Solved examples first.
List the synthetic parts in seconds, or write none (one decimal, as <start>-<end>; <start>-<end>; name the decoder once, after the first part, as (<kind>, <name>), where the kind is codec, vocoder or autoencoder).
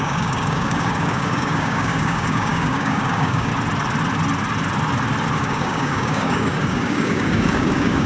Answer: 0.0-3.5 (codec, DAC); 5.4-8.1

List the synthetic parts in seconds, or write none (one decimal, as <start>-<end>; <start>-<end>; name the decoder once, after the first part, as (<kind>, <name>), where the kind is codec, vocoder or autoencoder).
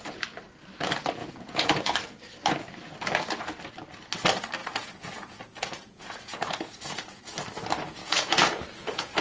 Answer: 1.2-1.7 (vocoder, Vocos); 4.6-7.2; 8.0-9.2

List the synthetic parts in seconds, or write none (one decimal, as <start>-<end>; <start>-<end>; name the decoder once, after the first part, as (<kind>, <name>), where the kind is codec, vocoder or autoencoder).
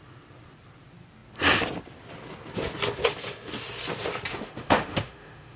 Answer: 4.3-5.6 (autoencoder, DAC-VAE)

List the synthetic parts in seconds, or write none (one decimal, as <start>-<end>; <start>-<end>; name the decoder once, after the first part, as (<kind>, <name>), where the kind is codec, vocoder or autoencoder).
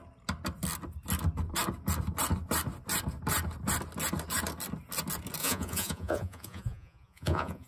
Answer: 5.4-7.7 (vocoder, Vocos)